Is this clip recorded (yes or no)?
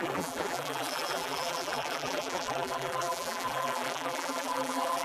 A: no